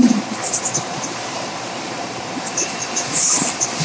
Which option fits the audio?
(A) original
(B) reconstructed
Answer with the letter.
B